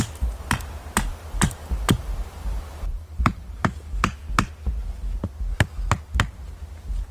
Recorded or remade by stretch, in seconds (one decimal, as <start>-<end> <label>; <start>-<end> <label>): 0.0-1.1 recorded; 1.1-4.2 remade; 4.2-7.1 recorded